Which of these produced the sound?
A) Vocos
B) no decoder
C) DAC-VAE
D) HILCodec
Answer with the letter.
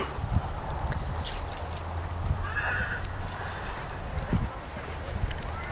B